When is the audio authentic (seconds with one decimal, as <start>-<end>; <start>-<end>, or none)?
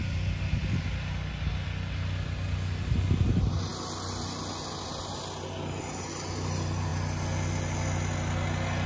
0.0-8.9